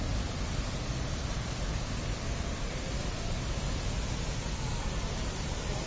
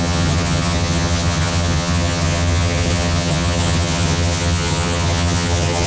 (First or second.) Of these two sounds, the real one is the first